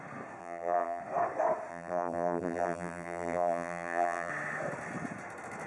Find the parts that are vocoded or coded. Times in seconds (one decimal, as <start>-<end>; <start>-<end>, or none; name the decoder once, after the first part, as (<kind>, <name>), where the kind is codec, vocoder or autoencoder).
0.4-1.0 (vocoder, BigVGAN v2); 1.7-4.3